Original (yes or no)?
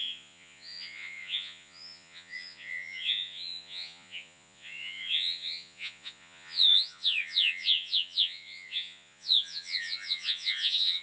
no